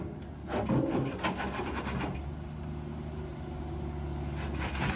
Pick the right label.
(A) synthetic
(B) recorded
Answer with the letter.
B